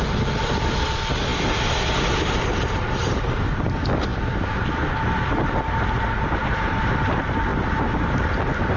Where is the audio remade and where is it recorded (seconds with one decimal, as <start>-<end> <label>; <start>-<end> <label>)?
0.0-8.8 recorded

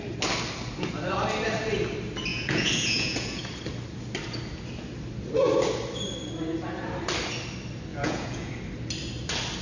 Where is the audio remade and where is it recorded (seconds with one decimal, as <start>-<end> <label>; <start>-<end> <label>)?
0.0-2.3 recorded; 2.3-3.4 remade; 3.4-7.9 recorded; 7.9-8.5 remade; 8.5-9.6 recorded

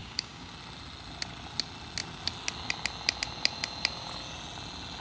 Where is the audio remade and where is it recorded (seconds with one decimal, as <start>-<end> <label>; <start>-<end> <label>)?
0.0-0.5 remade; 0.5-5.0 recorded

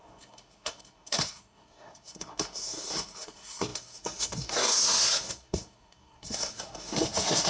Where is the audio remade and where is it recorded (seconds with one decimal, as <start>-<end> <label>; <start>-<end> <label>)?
0.0-7.5 remade

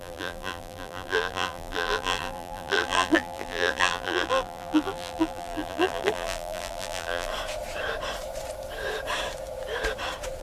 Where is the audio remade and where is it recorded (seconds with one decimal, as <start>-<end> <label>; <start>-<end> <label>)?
0.0-7.3 remade; 7.3-10.4 recorded

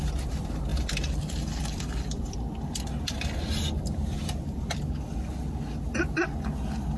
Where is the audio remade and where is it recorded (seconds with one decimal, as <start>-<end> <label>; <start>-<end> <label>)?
0.0-0.7 recorded; 0.7-4.9 remade; 4.9-7.0 recorded